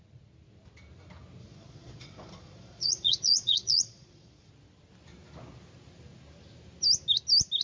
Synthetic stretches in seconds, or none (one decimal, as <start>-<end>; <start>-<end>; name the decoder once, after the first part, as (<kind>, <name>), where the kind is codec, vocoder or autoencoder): 1.4-4.5 (vocoder, Vocos)